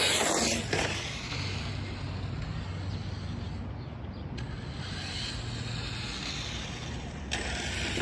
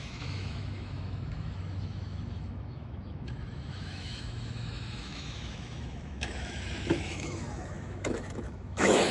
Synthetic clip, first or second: second